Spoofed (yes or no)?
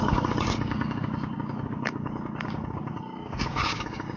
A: yes